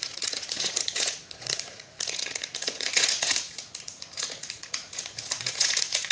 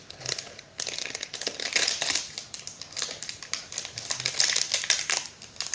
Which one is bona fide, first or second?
second